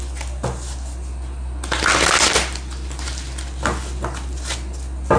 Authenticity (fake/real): real